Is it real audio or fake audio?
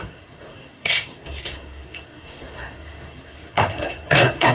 fake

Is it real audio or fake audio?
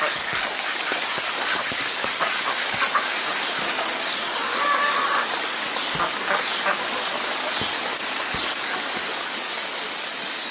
fake